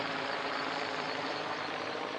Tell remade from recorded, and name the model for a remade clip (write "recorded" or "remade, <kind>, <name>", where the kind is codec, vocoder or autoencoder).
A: remade, vocoder, BigVGAN v2